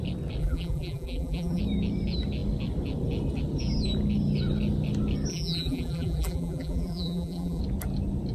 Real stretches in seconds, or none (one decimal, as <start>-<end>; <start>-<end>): 0.0-0.4; 1.6-5.3; 7.6-8.3